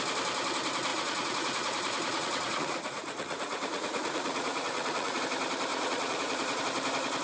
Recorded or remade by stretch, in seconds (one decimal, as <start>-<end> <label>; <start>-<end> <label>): 0.0-0.9 recorded; 0.9-5.2 remade; 5.2-5.7 recorded; 5.7-6.6 remade; 6.6-7.2 recorded